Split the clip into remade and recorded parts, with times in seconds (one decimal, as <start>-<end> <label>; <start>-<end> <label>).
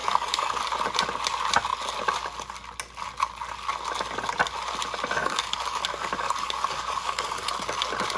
0.0-0.6 remade; 0.6-5.2 recorded; 5.2-7.5 remade; 7.5-8.2 recorded